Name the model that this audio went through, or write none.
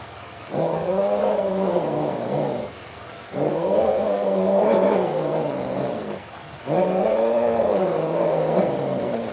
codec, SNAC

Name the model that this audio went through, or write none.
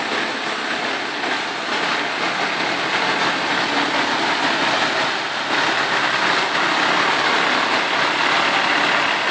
none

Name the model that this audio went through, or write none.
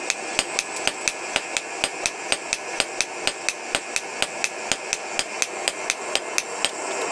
none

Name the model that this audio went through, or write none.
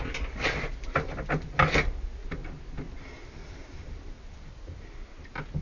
none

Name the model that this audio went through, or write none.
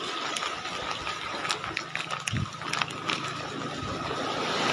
none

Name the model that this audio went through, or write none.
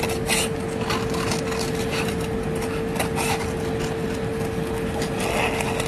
none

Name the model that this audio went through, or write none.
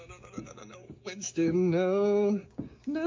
codec, DAC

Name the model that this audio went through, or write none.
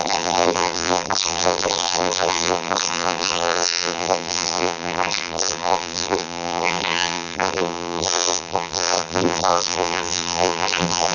vocoder, BigVGAN v2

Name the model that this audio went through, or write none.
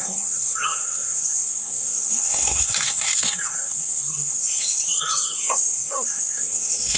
codec, SNAC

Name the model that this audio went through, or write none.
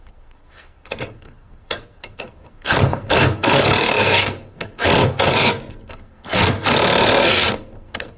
codec, SNAC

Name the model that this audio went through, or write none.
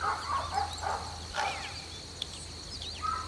none